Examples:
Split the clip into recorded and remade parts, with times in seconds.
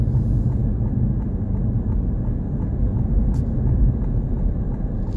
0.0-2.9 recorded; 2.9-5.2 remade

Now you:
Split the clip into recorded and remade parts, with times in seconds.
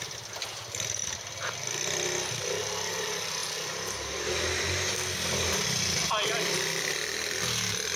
0.0-8.0 recorded